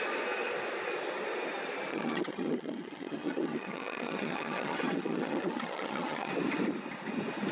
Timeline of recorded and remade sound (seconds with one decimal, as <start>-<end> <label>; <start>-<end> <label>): 0.0-1.9 recorded; 1.9-6.3 remade; 6.3-7.5 recorded